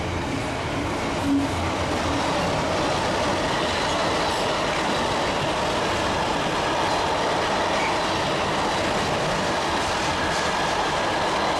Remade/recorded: recorded